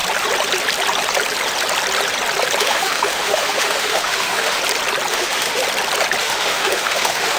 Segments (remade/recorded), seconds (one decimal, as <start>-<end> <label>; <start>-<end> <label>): 0.0-2.6 recorded; 2.6-4.6 remade; 4.6-5.1 recorded; 5.1-5.6 remade; 5.6-6.2 recorded; 6.2-7.4 remade